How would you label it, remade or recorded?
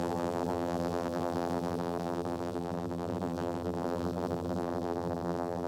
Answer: remade